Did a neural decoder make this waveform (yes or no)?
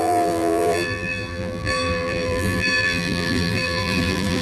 yes